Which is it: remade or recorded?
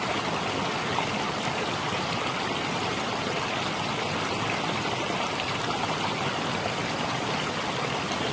recorded